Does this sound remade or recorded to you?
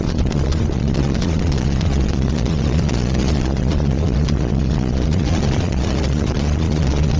remade